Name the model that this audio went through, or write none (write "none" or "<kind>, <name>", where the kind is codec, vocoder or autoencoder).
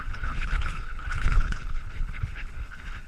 codec, HILCodec